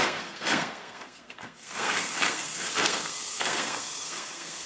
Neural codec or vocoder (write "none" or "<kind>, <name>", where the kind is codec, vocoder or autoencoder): codec, SNAC